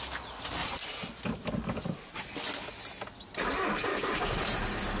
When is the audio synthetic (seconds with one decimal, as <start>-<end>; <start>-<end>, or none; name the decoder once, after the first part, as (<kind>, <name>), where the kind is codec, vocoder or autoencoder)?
3.9-4.4 (codec, DAC)